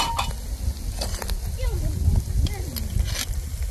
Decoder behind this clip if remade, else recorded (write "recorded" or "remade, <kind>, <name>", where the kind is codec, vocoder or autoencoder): recorded